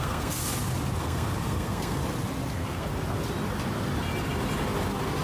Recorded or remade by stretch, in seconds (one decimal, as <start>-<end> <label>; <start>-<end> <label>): 0.0-0.4 remade; 0.4-1.0 recorded; 1.0-2.0 remade; 2.0-2.5 recorded; 2.5-2.9 remade; 2.9-5.2 recorded